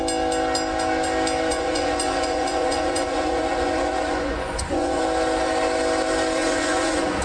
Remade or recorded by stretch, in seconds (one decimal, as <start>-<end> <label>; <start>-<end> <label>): 0.0-1.5 recorded; 1.5-5.0 remade; 5.0-6.4 recorded; 6.4-7.2 remade